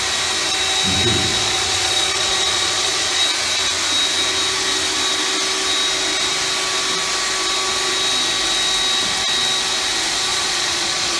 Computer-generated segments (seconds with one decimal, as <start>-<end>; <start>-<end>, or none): 1.3-3.2; 10.3-11.2